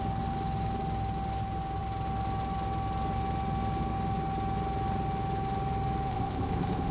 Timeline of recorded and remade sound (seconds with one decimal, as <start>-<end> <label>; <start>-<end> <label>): 0.0-6.1 recorded; 6.1-6.9 remade